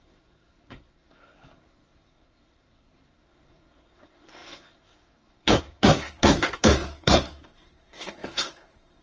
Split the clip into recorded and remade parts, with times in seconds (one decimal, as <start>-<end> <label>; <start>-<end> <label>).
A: 0.0-9.0 remade